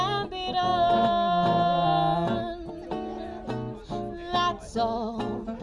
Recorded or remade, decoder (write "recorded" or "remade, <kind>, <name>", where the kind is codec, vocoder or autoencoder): recorded